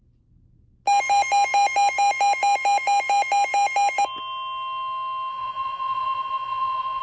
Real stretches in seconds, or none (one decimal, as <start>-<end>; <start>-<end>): 0.0-5.3